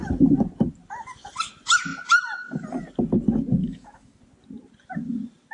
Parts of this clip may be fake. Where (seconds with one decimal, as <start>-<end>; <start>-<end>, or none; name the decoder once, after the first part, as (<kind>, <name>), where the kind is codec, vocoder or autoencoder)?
3.6-4.2 (autoencoder, DAC-VAE)